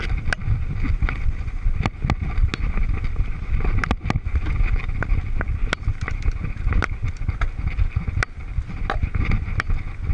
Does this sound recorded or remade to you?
recorded